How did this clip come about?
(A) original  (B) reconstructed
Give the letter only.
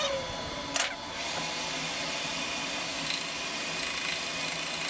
A